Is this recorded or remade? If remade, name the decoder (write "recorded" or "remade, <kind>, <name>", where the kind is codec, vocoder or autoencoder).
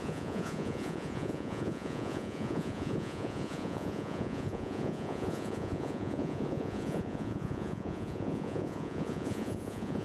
remade, vocoder, Vocos